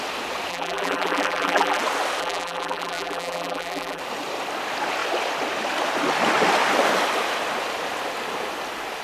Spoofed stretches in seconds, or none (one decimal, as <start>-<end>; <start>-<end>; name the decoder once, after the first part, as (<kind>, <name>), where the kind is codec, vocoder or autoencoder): 0.5-1.8 (vocoder, BigVGAN v2); 2.2-4.0